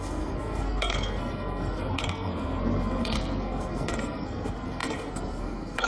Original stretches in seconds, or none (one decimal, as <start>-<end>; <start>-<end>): none